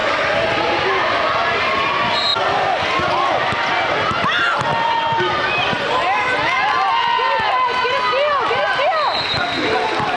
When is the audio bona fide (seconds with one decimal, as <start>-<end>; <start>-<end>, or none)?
0.0-10.2